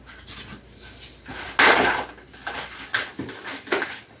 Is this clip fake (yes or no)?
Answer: no